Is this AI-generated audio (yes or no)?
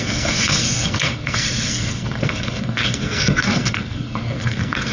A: yes